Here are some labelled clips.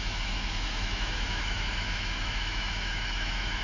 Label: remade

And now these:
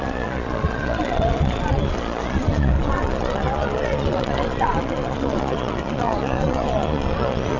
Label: remade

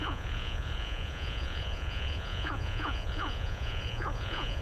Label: remade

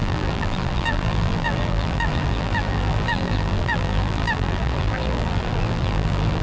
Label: remade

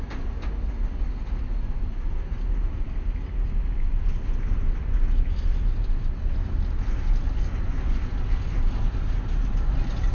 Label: recorded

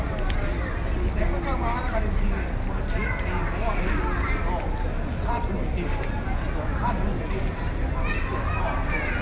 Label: recorded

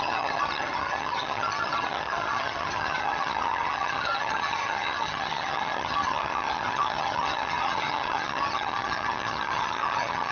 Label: remade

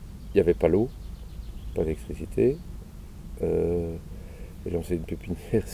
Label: recorded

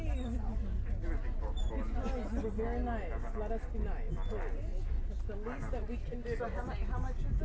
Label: recorded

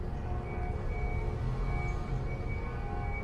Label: recorded